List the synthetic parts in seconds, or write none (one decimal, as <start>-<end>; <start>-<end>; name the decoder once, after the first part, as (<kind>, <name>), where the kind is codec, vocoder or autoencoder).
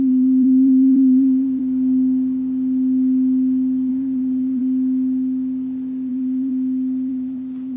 0.0-1.6 (vocoder, BigVGAN v2); 3.9-4.6; 6.1-6.5; 7.1-7.8